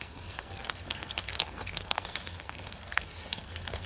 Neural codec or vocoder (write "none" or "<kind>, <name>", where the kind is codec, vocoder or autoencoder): codec, SNAC